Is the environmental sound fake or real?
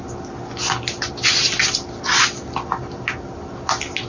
real